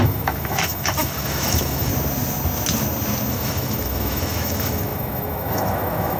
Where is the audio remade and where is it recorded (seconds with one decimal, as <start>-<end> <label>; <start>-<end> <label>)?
0.0-1.9 remade; 1.9-3.3 recorded; 3.3-6.2 remade

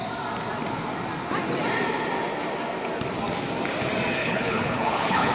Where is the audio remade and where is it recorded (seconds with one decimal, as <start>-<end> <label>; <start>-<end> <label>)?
0.0-4.2 recorded; 4.2-5.3 remade

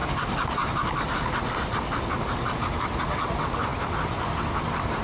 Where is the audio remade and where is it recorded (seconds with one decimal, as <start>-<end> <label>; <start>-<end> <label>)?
0.0-5.0 recorded

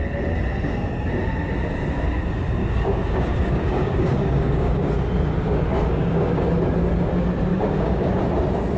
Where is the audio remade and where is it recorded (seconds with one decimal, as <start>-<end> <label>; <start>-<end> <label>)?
0.0-2.6 recorded; 2.6-4.9 remade; 4.9-5.7 recorded; 5.7-6.5 remade; 6.5-7.5 recorded; 7.5-8.2 remade; 8.2-8.8 recorded

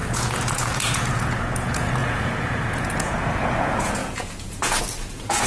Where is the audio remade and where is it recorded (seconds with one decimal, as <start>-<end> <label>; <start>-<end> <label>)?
0.0-5.5 remade

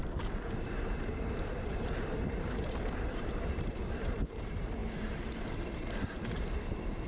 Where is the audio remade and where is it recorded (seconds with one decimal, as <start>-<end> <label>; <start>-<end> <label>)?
0.0-7.1 remade